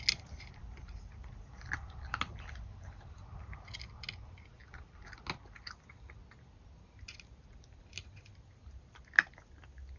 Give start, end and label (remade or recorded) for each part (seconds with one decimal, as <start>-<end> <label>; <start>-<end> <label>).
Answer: 0.0-10.0 recorded